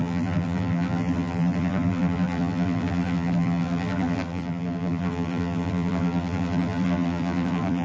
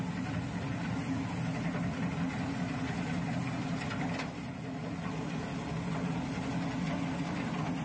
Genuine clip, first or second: second